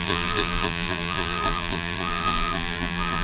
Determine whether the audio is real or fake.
fake